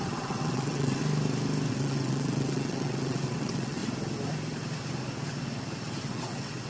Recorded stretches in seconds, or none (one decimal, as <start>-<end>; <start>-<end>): 1.0-1.7; 3.8-6.0

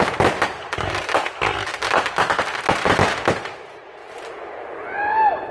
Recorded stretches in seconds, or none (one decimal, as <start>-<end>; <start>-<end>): 0.0-5.5

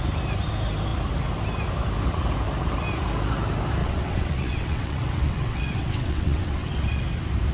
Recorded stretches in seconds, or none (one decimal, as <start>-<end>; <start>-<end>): 0.0-3.8; 7.0-7.5

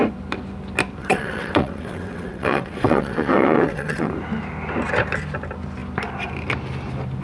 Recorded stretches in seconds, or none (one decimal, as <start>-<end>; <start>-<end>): 0.0-1.0; 4.1-7.2